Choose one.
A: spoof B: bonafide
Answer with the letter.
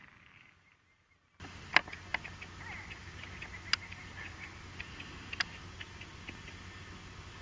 B